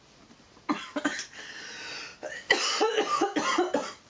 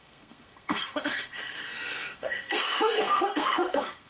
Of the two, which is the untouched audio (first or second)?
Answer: first